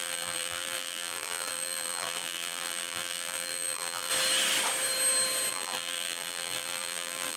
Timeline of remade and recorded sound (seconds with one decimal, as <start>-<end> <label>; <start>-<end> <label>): 0.0-4.1 remade; 4.1-5.5 recorded; 5.5-7.4 remade